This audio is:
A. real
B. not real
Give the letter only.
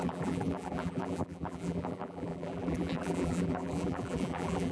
B